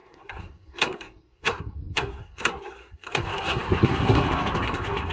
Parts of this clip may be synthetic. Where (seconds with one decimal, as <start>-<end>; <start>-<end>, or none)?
0.0-5.1